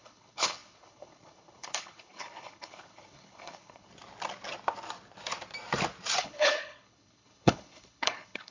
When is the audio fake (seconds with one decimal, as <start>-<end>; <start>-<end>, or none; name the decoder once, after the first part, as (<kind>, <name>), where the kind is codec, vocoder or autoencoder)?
0.0-3.9 (codec, HILCodec); 6.2-8.5